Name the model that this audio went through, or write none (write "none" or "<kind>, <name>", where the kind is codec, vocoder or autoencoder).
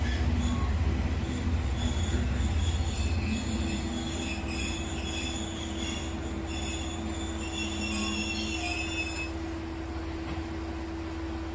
none